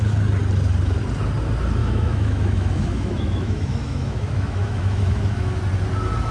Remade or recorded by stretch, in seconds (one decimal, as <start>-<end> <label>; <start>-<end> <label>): 0.0-1.8 recorded; 1.8-5.6 remade; 5.6-6.3 recorded